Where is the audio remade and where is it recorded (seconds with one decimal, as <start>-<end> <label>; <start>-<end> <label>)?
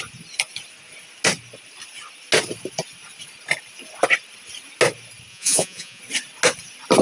0.0-5.3 recorded; 5.3-6.0 remade; 6.0-7.0 recorded